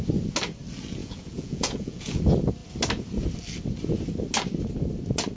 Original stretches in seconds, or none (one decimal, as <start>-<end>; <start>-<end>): 0.0-1.0; 2.2-5.4